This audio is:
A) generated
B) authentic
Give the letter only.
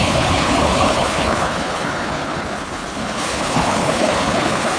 A